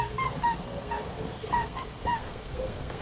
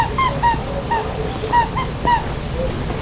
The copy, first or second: first